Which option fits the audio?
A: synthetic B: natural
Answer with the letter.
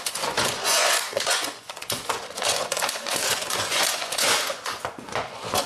A